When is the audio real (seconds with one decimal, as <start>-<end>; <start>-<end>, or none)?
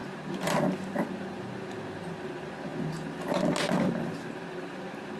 0.0-5.2